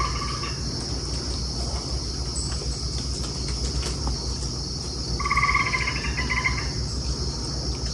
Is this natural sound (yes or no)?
yes